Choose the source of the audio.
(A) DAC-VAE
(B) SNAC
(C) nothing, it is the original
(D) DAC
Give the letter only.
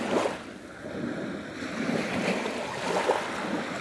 C